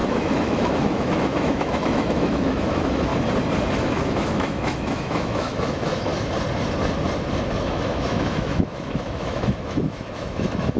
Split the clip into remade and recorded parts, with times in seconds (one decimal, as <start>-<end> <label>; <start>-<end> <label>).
0.0-3.1 remade; 3.1-3.7 recorded; 3.7-6.1 remade; 6.1-7.5 recorded; 7.5-10.8 remade